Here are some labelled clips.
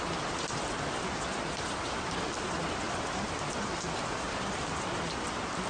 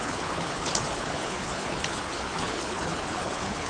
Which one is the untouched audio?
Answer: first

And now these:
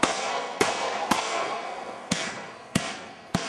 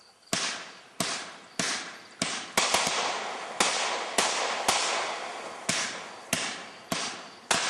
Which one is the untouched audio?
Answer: second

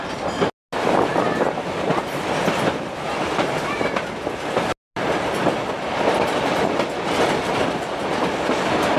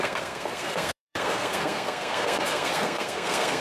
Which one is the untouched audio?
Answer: first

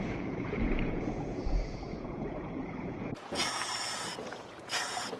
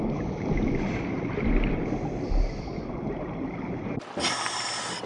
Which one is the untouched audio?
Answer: second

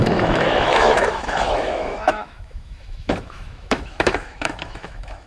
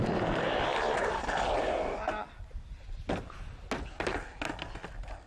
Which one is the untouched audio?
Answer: second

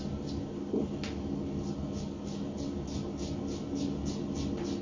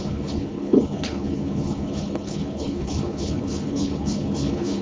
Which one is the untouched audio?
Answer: first